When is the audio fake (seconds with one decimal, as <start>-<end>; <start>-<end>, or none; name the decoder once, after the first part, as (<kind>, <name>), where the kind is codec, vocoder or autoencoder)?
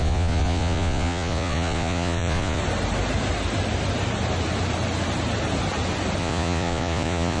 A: 0.0-2.6 (vocoder, Vocos); 6.2-7.4